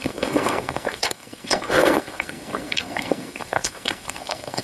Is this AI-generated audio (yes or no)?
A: yes